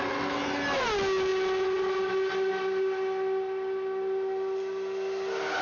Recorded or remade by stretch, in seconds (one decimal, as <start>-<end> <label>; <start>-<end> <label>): 0.0-5.6 recorded